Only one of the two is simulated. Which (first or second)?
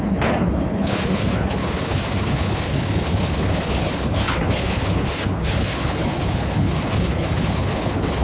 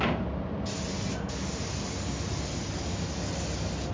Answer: first